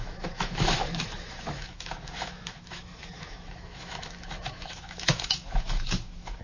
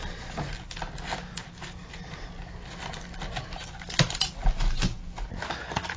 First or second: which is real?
second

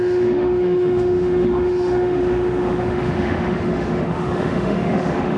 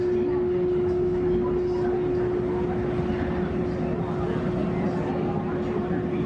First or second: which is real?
second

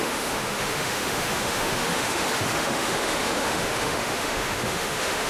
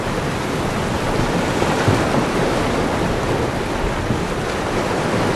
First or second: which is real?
second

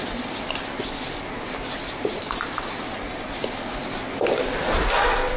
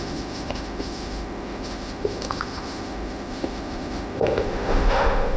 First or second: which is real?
first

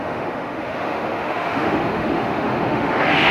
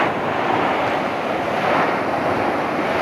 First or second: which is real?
second